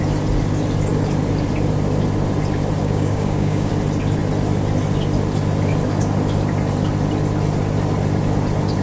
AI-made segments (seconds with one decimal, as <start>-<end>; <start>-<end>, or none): 2.8-3.7